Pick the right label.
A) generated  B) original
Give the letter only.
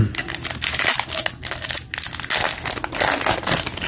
B